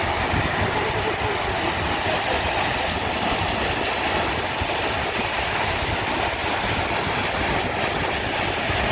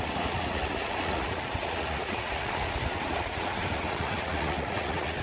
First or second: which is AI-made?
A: second